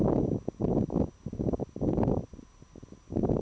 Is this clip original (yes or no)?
yes